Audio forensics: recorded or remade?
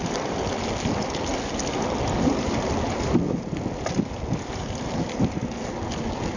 recorded